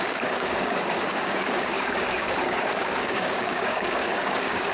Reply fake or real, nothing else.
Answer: fake